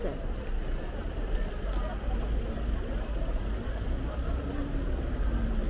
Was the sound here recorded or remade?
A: recorded